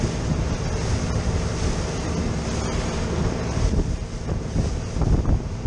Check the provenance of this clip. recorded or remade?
recorded